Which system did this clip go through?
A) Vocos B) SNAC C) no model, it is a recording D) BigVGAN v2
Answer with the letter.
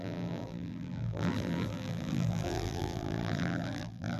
D